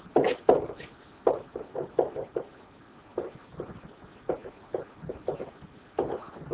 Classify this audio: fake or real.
real